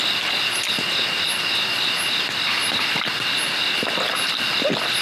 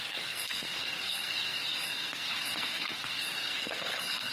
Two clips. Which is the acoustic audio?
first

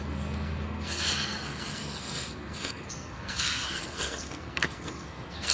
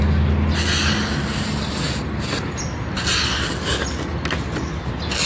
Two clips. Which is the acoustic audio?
second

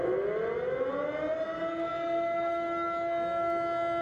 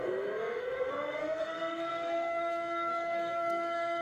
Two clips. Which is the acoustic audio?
first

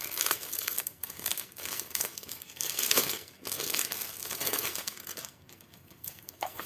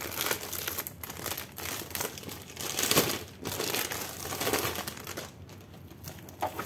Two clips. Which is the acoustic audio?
second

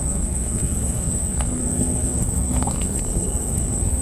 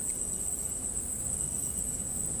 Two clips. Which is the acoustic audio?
second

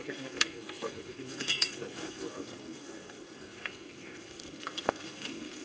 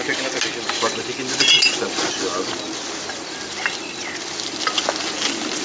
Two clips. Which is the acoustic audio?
second